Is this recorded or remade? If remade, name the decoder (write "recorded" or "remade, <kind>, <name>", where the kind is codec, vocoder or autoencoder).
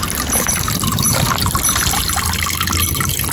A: recorded